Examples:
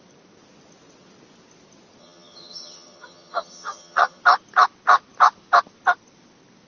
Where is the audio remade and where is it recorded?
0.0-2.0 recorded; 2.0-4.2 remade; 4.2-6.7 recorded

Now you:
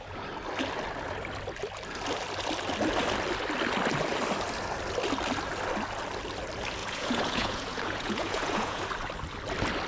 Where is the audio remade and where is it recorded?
0.0-6.8 recorded; 6.8-8.8 remade; 8.8-9.9 recorded

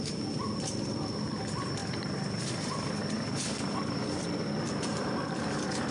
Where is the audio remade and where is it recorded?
0.0-5.9 remade